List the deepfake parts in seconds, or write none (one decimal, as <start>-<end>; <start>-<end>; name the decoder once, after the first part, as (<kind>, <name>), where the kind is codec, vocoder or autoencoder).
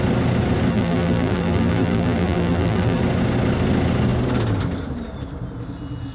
0.7-3.0 (vocoder, BigVGAN v2)